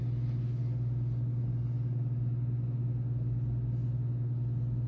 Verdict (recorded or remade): recorded